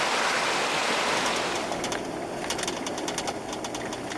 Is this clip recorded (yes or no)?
yes